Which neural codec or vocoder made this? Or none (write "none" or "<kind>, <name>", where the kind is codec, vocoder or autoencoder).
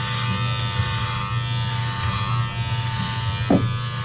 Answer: none